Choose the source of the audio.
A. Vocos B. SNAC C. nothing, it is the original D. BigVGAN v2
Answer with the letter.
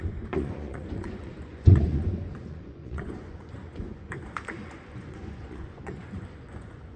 A